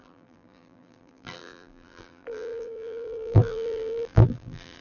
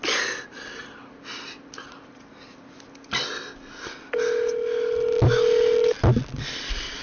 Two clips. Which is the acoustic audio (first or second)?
second